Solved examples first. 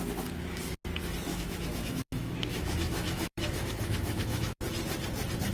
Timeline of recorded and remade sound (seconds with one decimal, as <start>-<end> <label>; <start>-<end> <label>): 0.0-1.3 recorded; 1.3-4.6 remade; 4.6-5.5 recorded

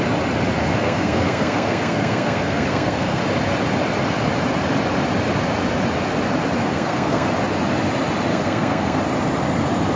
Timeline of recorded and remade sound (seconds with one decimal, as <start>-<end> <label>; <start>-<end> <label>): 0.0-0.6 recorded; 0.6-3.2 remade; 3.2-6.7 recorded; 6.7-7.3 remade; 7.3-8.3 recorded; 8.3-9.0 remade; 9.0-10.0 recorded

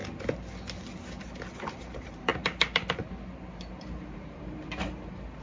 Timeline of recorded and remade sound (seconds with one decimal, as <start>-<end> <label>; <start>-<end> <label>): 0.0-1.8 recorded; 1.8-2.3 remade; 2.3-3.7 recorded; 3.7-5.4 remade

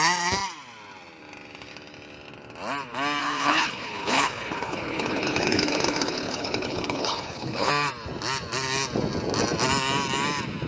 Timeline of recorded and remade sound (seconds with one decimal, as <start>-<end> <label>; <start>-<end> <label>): 0.0-3.2 recorded; 3.2-7.7 remade; 7.7-10.7 recorded

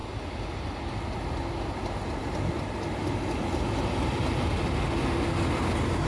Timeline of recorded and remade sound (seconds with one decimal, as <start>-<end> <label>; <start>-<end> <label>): 0.0-6.1 recorded